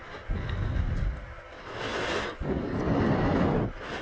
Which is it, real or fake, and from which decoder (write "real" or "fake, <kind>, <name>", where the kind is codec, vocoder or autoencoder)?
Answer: real